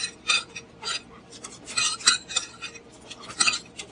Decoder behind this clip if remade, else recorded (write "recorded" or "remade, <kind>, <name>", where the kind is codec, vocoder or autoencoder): recorded